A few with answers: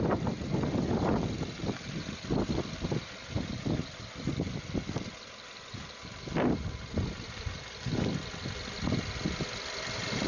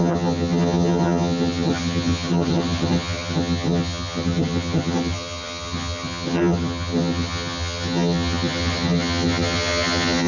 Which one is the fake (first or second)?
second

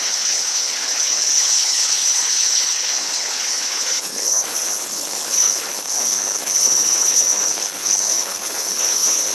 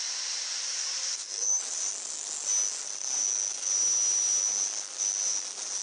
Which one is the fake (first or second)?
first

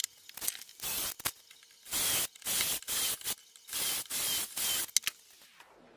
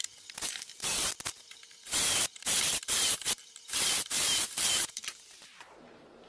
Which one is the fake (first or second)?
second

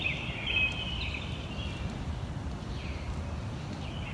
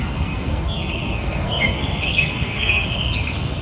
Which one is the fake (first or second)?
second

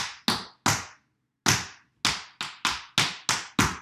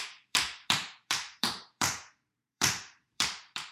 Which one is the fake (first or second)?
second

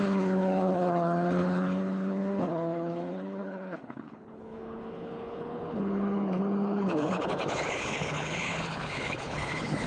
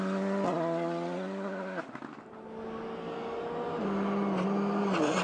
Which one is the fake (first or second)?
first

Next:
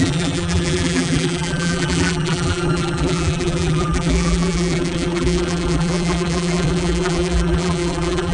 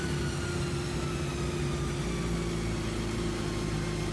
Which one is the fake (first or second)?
first